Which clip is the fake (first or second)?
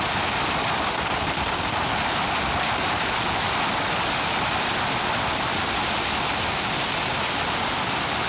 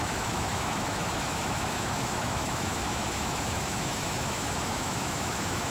second